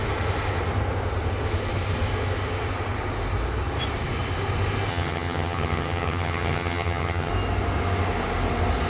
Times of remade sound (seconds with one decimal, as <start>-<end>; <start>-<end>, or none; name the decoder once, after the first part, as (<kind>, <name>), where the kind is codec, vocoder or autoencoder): 4.9-7.3 (vocoder, HiFi-GAN)